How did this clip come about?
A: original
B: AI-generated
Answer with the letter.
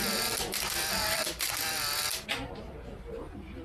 B